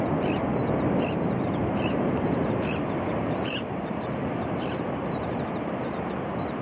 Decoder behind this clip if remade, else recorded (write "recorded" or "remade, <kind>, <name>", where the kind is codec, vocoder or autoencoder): remade, vocoder, BigVGAN v2